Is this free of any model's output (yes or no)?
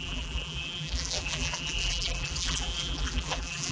no